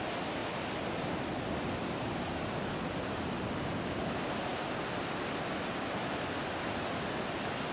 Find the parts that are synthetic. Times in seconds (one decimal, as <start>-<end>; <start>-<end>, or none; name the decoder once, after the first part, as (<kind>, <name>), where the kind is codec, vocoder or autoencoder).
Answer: none